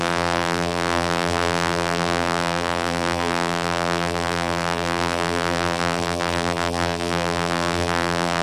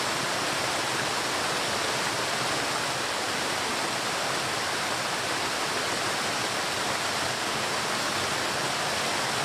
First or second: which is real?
second